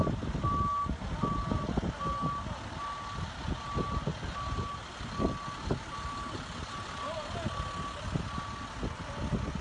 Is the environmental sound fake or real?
real